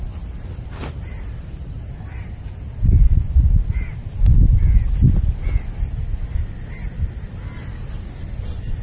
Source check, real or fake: real